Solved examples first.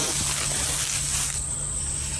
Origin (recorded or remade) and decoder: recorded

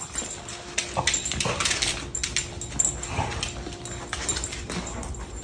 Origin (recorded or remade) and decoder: recorded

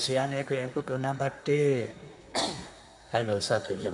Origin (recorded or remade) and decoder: remade, codec, SNAC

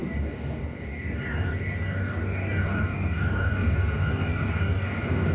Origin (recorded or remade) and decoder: remade, codec, DAC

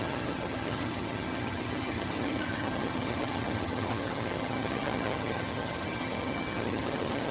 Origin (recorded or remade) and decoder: remade, vocoder, HiFi-GAN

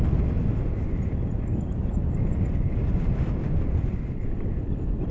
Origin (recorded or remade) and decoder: recorded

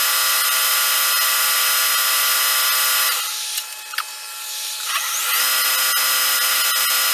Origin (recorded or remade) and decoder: recorded